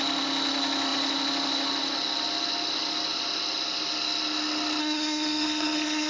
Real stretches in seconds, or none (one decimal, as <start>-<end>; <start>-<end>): 0.0-4.8